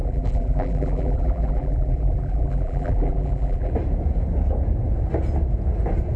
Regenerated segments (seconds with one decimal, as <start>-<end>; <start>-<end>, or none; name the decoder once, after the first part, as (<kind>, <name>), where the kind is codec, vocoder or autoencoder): 0.0-3.7 (vocoder, BigVGAN v2)